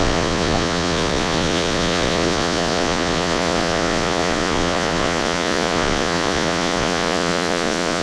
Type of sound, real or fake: fake